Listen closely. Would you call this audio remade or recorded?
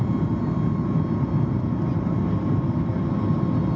recorded